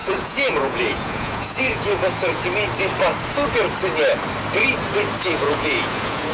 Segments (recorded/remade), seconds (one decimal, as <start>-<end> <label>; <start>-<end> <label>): 0.0-2.4 remade; 2.4-5.2 recorded; 5.2-6.3 remade